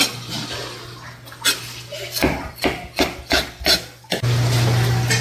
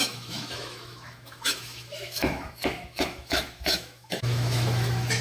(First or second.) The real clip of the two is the first